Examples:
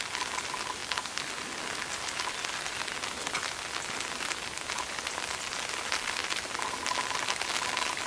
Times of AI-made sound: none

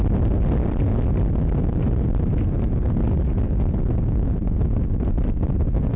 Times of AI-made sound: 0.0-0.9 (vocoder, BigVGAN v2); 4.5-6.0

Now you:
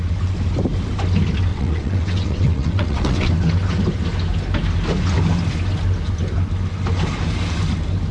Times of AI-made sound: 1.5-3.3 (vocoder, WaveNeXt)